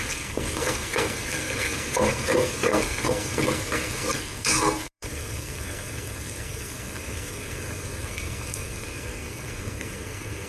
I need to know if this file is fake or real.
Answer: fake